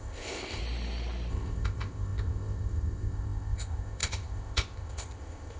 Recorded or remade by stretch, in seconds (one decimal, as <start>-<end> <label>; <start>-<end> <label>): 0.0-0.6 remade; 0.6-1.3 recorded; 1.3-5.6 remade